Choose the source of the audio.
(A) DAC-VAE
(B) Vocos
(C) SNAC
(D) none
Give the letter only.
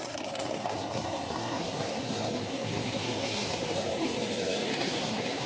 C